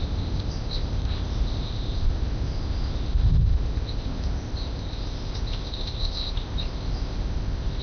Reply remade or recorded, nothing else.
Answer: remade